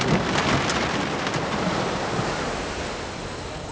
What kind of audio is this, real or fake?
real